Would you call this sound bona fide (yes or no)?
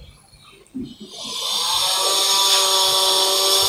yes